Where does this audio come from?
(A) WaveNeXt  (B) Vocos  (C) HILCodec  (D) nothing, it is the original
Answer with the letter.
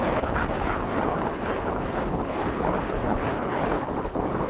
C